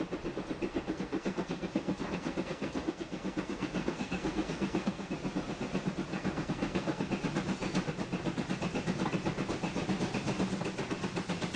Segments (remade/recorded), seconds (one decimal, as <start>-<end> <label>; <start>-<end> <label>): 0.0-0.7 recorded; 0.7-5.1 remade; 5.1-6.1 recorded; 6.1-7.1 remade; 7.1-11.6 recorded